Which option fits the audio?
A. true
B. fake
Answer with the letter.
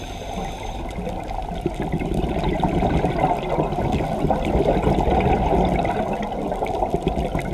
A